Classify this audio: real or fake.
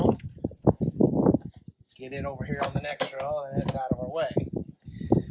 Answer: real